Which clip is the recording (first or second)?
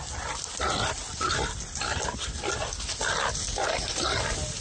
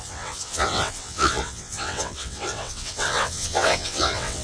first